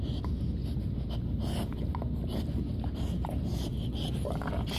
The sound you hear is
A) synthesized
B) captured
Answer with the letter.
B